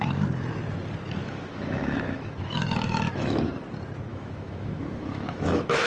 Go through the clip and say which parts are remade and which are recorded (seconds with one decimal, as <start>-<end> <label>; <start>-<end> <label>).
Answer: 0.0-1.2 recorded; 1.2-3.5 remade; 3.5-4.1 recorded; 4.1-5.9 remade